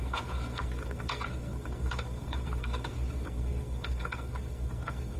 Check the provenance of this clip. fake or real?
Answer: fake